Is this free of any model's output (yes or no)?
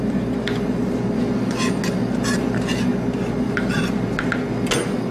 yes